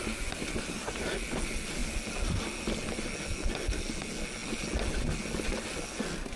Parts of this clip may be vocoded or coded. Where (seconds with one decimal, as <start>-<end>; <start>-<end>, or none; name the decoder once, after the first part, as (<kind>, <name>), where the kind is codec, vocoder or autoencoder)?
none